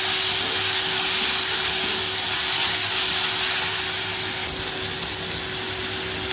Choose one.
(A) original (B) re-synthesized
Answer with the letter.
A